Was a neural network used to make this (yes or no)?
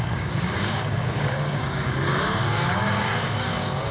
yes